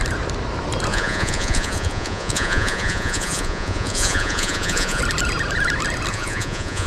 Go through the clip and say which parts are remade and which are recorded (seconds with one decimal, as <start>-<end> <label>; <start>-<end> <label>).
0.0-0.9 recorded; 0.9-5.0 remade; 5.0-6.1 recorded; 6.1-6.9 remade